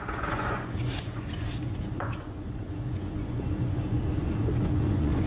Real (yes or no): no